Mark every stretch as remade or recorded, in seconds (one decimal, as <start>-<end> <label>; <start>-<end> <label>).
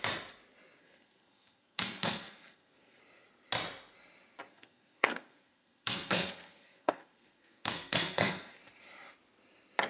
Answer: 0.0-0.8 recorded; 0.8-3.0 remade; 3.0-4.5 recorded; 4.5-8.6 remade; 8.6-9.9 recorded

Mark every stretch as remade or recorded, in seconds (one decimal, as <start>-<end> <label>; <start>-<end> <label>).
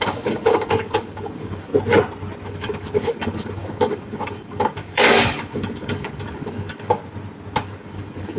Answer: 0.0-1.7 remade; 1.7-2.5 recorded; 2.5-7.0 remade; 7.0-7.6 recorded; 7.6-8.4 remade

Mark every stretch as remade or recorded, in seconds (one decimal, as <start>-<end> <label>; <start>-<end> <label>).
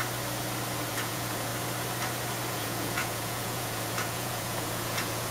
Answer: 0.0-0.9 recorded; 0.9-1.5 remade; 1.5-2.5 recorded; 2.5-5.3 remade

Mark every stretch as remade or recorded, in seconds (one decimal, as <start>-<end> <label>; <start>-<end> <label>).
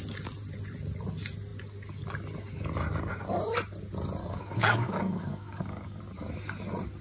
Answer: 0.0-4.2 recorded; 4.2-6.0 remade; 6.0-7.0 recorded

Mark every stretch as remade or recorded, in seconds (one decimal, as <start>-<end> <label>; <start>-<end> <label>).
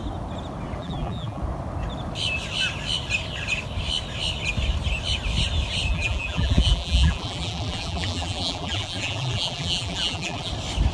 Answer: 0.0-0.8 recorded; 0.8-1.4 remade; 1.4-5.9 recorded; 5.9-10.5 remade; 10.5-10.9 recorded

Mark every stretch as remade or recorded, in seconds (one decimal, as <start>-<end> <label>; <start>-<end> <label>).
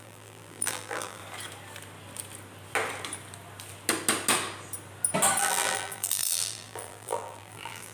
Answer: 0.0-1.2 remade; 1.2-5.4 recorded; 5.4-7.9 remade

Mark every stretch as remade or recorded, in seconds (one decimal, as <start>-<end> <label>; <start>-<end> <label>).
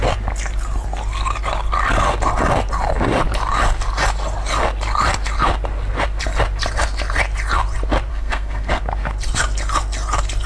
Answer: 0.0-8.1 recorded; 8.1-8.8 remade; 8.8-10.5 recorded